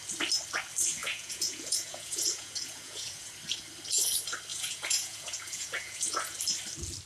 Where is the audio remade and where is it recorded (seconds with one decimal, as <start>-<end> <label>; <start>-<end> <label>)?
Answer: 0.0-1.0 recorded; 1.0-3.3 remade; 3.3-4.5 recorded; 4.5-6.4 remade; 6.4-7.1 recorded